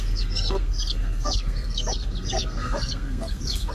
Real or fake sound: fake